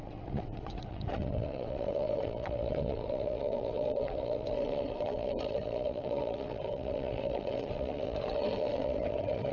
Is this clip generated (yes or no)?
yes